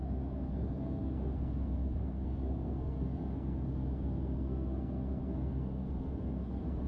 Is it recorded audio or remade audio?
remade